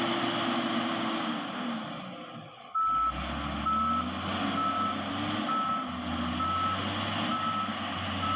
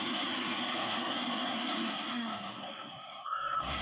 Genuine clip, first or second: first